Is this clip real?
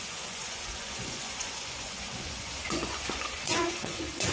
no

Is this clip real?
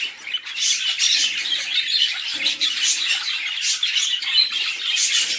yes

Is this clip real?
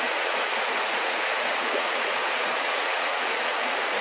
no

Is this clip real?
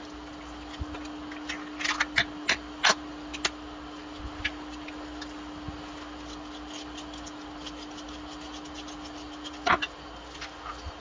yes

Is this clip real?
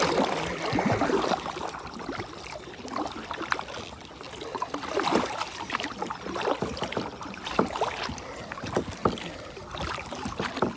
yes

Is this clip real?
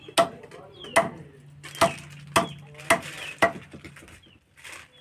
yes